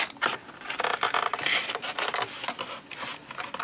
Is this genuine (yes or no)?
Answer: yes